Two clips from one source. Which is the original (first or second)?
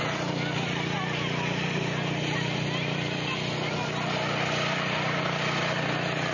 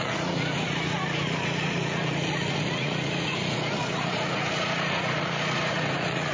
first